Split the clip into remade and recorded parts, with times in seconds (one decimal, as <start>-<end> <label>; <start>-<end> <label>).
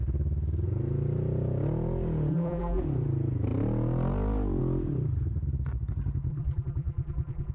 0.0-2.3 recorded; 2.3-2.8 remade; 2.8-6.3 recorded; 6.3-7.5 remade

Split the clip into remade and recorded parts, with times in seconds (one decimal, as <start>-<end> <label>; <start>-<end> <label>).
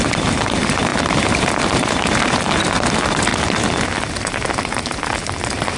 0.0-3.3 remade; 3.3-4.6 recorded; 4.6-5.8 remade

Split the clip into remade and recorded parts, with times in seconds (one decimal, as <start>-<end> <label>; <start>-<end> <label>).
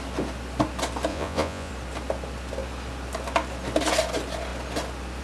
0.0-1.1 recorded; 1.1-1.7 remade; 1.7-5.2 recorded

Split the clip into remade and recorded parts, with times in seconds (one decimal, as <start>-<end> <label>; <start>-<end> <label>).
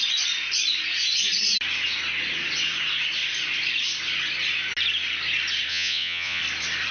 0.0-5.7 recorded; 5.7-6.4 remade; 6.4-6.9 recorded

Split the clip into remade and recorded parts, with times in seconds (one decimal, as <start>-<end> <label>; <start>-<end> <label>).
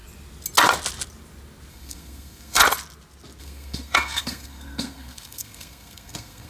0.0-1.7 recorded; 1.7-2.6 remade; 2.6-3.4 recorded; 3.4-6.5 remade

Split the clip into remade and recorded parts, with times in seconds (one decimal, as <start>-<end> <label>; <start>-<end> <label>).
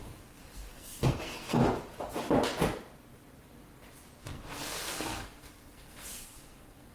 0.0-1.6 remade; 1.6-4.2 recorded; 4.2-6.9 remade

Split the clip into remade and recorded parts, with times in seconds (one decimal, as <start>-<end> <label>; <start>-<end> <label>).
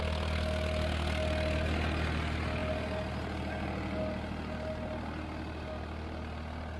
0.0-6.8 recorded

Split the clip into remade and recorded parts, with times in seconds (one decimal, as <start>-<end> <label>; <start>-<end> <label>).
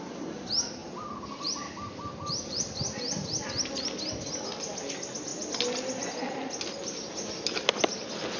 0.0-0.8 recorded; 0.8-4.1 remade; 4.1-8.4 recorded